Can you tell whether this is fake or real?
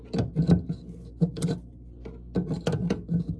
real